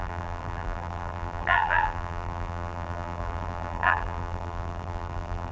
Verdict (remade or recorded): remade